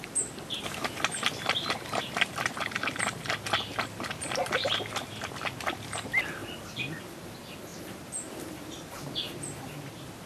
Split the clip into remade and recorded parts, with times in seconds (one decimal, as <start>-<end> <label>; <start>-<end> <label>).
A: 0.0-10.3 recorded